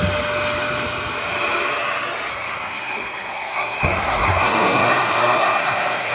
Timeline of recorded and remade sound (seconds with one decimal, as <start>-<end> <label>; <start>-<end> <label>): 0.0-2.3 recorded; 2.3-6.1 remade